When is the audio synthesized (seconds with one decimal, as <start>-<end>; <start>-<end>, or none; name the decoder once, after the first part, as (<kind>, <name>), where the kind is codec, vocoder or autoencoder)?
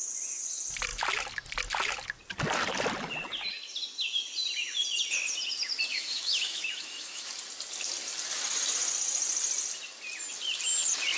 5.9-7.3 (autoencoder, DAC-VAE)